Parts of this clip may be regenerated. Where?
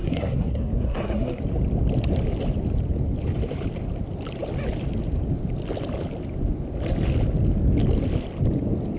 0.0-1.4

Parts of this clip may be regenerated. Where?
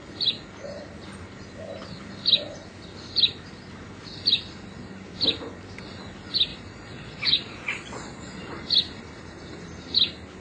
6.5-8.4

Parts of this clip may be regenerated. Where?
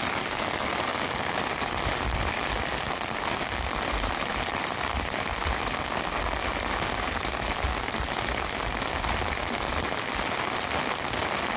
none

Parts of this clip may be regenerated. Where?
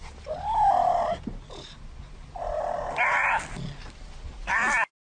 none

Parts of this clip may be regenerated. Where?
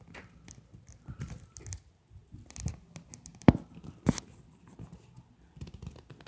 none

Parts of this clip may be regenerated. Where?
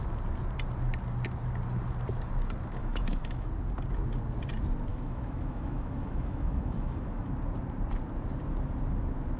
2.8-3.5; 4.9-7.3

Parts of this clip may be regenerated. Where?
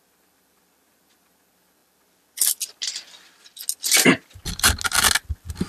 none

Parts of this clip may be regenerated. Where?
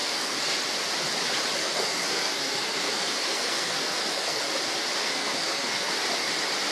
0.0-0.6; 1.6-4.4; 5.0-5.9